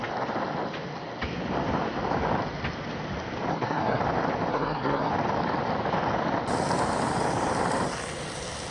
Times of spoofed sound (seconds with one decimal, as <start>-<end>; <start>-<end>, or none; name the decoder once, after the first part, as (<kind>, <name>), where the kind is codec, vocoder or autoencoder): 3.5-4.0 (codec, SNAC); 4.5-5.1